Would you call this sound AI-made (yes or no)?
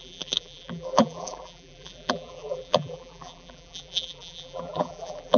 yes